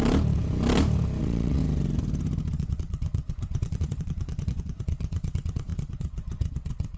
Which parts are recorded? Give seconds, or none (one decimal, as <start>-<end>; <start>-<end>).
0.0-1.2; 1.6-2.5